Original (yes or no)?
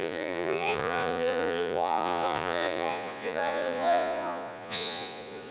no